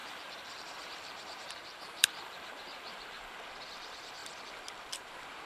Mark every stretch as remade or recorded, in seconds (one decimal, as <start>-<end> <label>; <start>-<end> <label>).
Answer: 0.0-3.3 remade; 3.3-5.5 recorded